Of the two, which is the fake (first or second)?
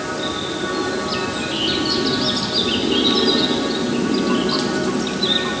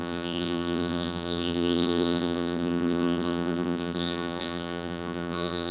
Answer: second